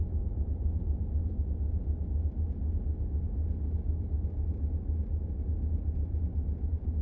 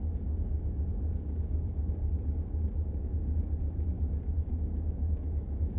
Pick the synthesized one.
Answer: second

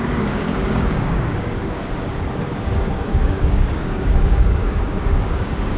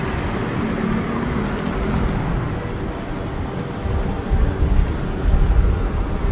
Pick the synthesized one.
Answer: first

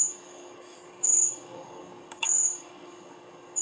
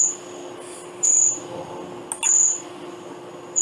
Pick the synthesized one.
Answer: first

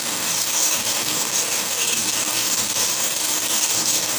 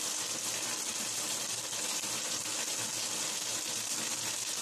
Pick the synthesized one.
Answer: first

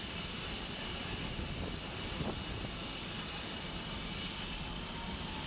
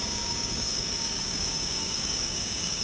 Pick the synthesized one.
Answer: second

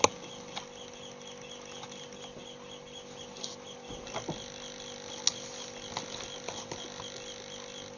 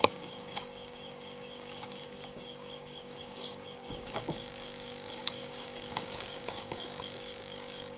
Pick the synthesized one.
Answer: second